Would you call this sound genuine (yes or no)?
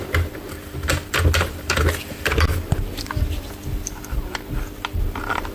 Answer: no